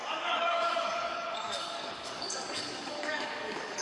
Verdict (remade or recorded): remade